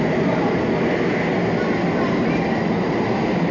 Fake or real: real